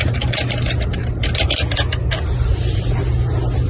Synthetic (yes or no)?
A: no